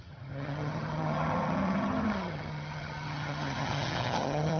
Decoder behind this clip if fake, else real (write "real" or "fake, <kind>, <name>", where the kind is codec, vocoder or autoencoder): fake, vocoder, HiFi-GAN